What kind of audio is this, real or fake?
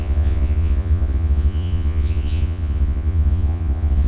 fake